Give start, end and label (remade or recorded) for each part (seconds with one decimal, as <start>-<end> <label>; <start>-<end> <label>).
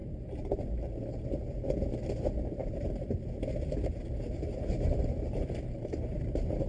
0.0-0.6 remade; 0.6-2.6 recorded; 2.6-6.7 remade